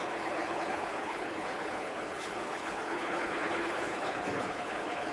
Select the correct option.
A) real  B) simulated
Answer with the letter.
B